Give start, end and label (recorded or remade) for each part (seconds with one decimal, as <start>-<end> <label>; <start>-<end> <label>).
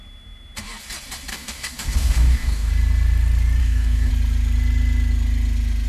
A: 0.0-1.3 recorded; 1.3-2.7 remade; 2.7-3.6 recorded; 3.6-4.1 remade; 4.1-5.9 recorded